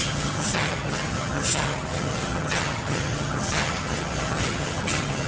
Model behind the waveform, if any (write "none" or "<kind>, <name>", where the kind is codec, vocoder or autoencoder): vocoder, HiFi-GAN